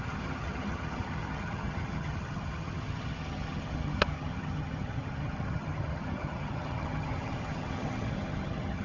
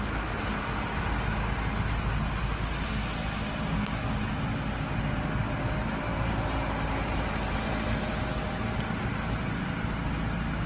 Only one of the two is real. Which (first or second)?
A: second